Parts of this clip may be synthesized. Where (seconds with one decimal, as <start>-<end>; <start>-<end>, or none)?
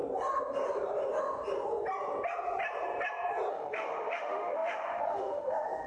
3.5-5.9